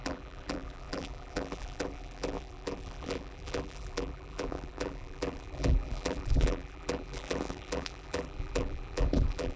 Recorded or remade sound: remade